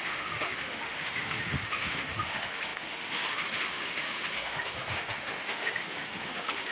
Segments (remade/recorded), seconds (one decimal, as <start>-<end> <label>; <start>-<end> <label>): 0.0-6.7 remade